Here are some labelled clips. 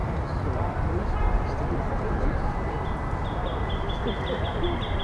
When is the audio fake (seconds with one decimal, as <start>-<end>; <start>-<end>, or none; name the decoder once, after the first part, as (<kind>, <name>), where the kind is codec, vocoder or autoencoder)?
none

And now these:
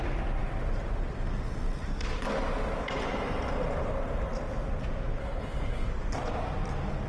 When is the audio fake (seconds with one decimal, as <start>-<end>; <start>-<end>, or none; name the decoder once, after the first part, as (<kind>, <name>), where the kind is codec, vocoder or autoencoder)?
5.2-5.9 (codec, HILCodec)

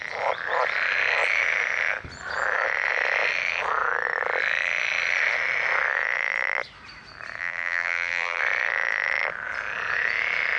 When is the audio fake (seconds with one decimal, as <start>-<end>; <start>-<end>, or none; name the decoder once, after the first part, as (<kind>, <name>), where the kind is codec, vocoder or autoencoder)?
7.4-8.4 (vocoder, BigVGAN v2)

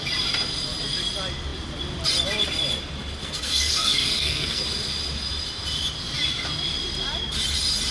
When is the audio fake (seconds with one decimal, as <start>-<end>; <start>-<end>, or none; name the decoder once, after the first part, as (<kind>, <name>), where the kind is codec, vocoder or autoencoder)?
3.2-4.6 (codec, SNAC)